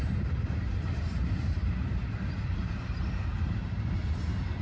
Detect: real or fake fake